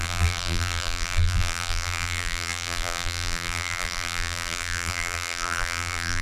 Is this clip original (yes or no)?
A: no